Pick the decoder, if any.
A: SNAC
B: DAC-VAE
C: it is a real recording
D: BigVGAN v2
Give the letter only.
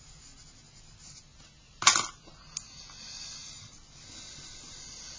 C